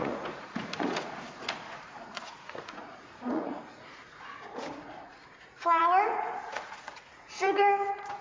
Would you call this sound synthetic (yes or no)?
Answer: yes